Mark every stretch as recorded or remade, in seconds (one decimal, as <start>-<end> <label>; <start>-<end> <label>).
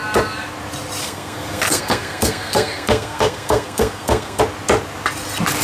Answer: 0.0-1.0 recorded; 1.0-4.4 remade; 4.4-5.6 recorded